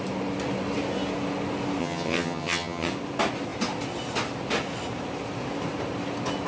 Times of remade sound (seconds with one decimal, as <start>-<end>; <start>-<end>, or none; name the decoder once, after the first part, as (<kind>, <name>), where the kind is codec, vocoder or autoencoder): 1.8-2.9 (vocoder, HiFi-GAN)